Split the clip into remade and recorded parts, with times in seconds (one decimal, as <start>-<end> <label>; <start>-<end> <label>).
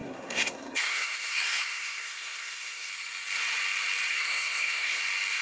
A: 0.0-2.9 remade; 2.9-4.1 recorded; 4.1-5.0 remade; 5.0-5.4 recorded